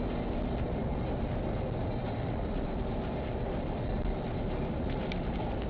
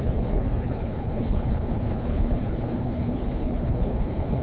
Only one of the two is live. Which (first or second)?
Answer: first